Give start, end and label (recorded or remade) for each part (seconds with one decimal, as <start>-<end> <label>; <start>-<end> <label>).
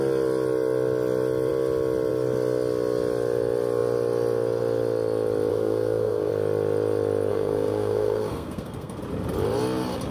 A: 0.0-5.5 recorded; 5.5-6.3 remade; 6.3-7.3 recorded; 7.3-9.0 remade; 9.0-10.1 recorded